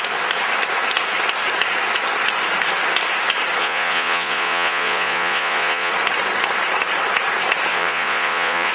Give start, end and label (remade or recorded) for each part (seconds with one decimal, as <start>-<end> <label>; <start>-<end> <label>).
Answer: 0.0-3.6 recorded; 3.6-5.9 remade; 5.9-7.7 recorded; 7.7-8.7 remade